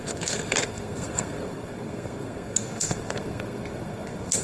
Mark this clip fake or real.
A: fake